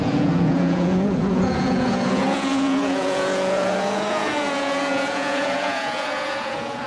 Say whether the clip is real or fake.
fake